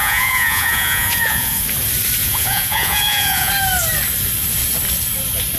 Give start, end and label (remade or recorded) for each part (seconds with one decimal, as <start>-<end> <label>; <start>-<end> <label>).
0.0-1.6 remade; 1.6-2.2 recorded; 2.2-3.5 remade; 3.5-5.6 recorded